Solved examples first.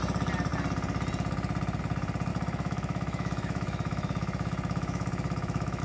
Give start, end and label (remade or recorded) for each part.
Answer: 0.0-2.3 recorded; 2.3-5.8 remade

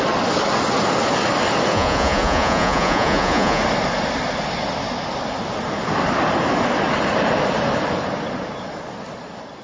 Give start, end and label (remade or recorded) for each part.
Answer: 0.0-1.7 recorded; 1.7-3.6 remade; 3.6-9.6 recorded

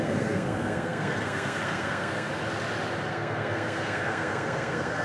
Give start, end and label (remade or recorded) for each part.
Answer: 0.0-2.3 remade; 2.3-3.1 recorded; 3.1-5.0 remade